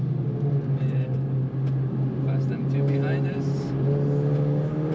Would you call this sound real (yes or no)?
yes